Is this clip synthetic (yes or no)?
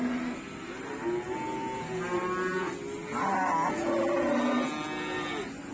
no